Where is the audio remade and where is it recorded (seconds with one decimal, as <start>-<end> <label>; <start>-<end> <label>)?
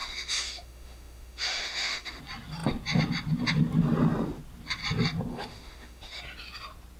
0.0-2.2 remade; 2.2-5.3 recorded; 5.3-6.2 remade; 6.2-7.0 recorded